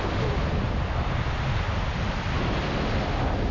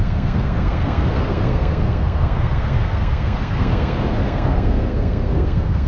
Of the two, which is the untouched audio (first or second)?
first